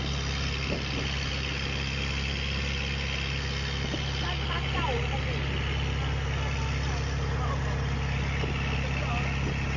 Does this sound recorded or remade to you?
recorded